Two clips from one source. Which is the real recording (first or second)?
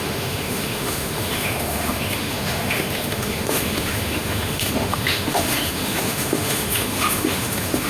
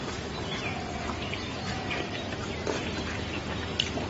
second